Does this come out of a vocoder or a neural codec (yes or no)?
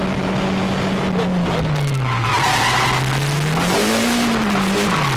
no